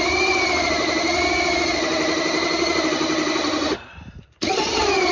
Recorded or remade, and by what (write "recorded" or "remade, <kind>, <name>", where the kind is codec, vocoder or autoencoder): remade, vocoder, BigVGAN v2